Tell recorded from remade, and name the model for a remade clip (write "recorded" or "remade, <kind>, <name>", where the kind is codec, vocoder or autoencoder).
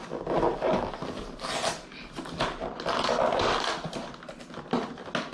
recorded